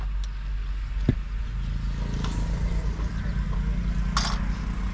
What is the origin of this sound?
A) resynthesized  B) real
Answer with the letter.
B